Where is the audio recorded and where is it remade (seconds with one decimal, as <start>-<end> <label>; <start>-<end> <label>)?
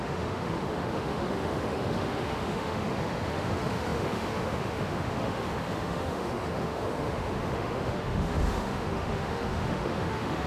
0.0-10.5 remade